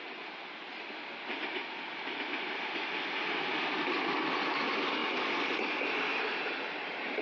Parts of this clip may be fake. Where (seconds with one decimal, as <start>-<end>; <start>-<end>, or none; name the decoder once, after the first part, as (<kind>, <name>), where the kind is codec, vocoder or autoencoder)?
none